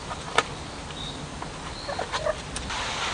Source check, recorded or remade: recorded